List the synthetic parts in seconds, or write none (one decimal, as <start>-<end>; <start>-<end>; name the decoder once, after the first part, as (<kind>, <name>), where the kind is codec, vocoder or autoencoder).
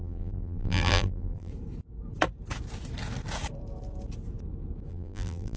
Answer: 0.0-1.5 (vocoder, BigVGAN v2); 4.9-5.6